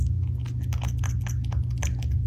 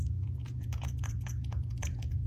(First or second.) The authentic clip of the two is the first